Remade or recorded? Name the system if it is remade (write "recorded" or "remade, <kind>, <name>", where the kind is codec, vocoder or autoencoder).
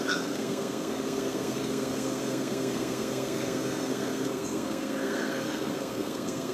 remade, codec, SNAC